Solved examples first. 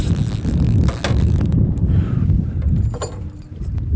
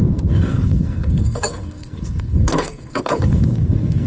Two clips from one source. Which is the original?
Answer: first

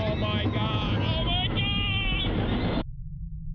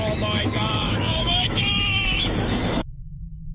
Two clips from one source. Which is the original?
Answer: first